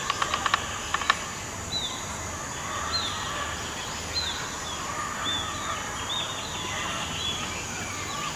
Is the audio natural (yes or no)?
yes